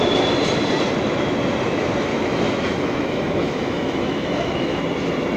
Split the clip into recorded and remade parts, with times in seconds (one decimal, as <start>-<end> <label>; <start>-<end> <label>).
0.0-2.1 recorded; 2.1-4.8 remade; 4.8-5.4 recorded